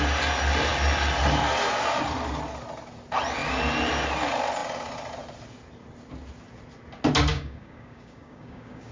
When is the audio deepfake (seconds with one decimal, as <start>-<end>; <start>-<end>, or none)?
7.3-8.9